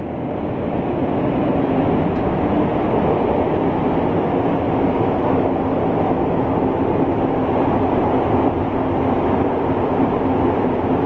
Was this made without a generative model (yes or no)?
yes